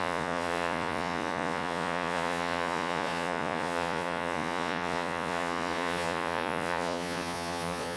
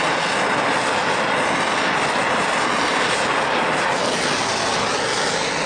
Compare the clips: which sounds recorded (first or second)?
second